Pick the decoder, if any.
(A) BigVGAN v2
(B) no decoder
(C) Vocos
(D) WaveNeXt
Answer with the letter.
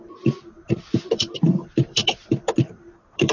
A